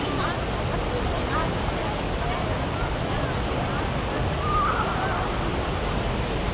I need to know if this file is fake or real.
real